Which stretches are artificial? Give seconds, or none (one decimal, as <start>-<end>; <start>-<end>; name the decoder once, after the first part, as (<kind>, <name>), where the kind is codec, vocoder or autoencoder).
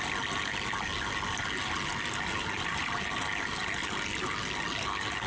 none